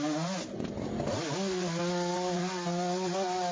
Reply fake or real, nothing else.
real